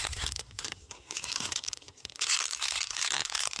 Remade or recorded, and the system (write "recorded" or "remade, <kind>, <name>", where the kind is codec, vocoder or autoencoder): remade, codec, SNAC